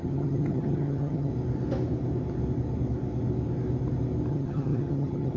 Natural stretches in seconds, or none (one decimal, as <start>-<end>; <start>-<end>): 1.3-4.3